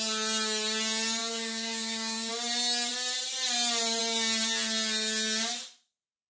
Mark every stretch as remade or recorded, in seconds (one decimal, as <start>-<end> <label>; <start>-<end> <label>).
0.0-1.2 recorded; 1.2-2.3 remade; 2.3-6.3 recorded